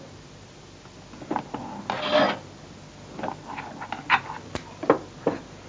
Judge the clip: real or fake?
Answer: real